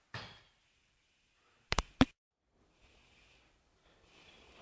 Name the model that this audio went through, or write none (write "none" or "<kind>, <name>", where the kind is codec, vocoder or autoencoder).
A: none